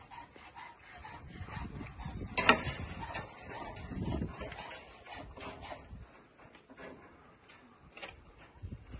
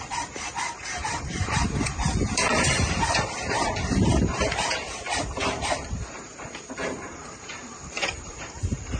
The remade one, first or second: second